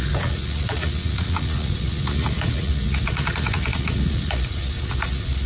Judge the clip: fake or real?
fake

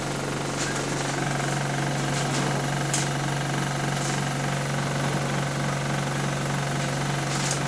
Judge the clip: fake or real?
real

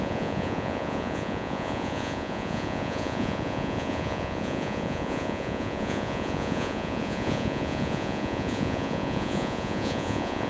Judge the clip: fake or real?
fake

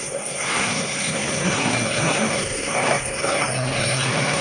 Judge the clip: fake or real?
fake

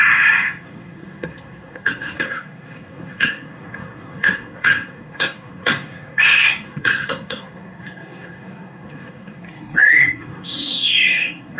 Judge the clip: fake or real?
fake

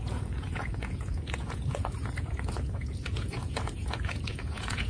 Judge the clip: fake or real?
fake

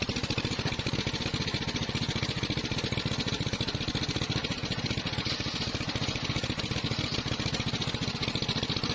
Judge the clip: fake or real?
real